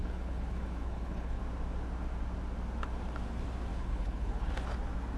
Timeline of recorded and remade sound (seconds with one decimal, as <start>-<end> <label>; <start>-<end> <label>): 0.0-1.4 remade; 1.4-3.7 recorded; 3.7-4.5 remade; 4.5-5.2 recorded